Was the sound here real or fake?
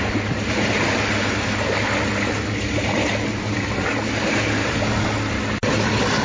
real